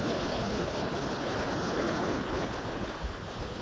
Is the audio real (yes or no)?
no